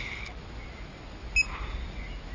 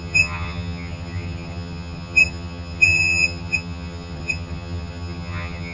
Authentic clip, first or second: first